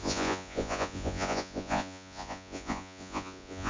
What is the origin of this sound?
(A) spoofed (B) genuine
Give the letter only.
A